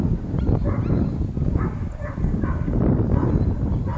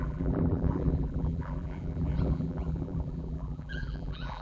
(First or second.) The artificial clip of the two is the second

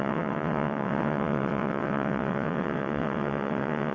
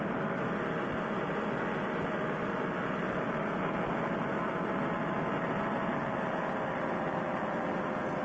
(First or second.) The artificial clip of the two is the first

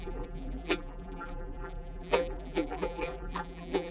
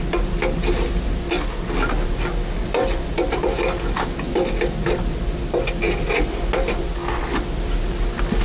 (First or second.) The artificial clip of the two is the first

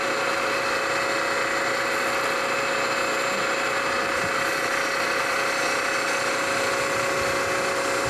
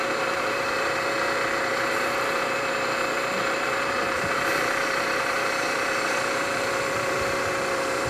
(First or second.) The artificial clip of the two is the second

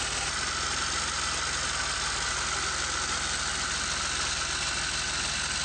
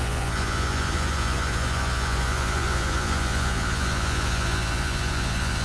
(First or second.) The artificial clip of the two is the second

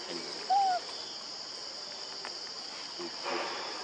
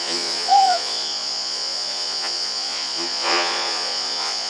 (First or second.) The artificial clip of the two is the second